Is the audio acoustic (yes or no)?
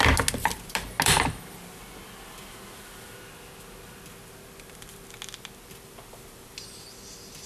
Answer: yes